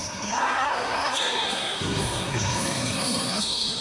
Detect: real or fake fake